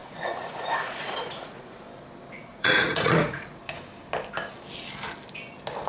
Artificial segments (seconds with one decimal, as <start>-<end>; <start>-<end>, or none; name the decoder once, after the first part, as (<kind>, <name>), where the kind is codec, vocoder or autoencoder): 0.0-1.8 (vocoder, Vocos); 2.5-3.6